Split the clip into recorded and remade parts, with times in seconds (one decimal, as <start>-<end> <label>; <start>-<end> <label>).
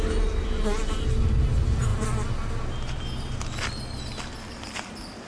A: 0.0-5.3 recorded